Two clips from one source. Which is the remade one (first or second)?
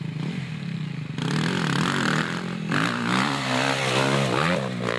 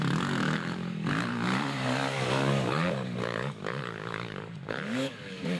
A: second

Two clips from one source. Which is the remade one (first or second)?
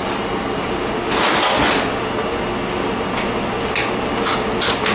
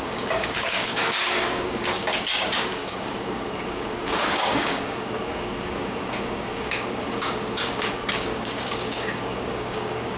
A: second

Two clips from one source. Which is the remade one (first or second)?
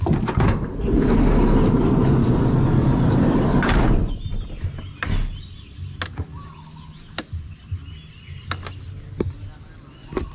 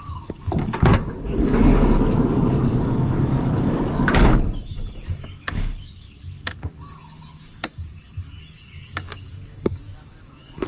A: second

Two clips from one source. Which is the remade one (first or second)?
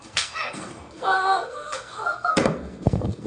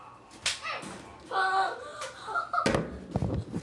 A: first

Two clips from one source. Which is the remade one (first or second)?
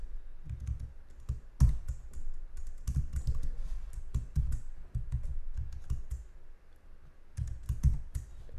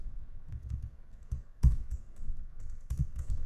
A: second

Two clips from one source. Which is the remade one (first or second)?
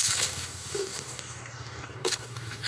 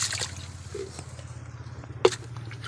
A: first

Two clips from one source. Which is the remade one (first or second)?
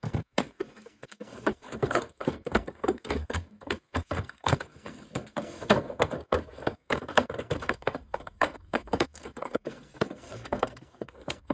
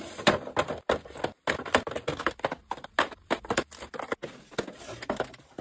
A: first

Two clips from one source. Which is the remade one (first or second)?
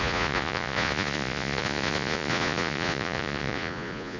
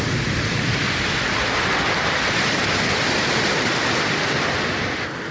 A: first